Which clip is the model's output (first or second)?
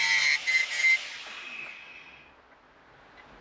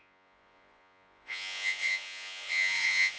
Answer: second